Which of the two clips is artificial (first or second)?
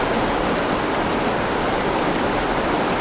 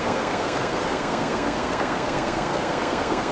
second